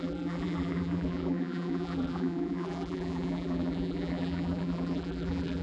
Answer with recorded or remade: remade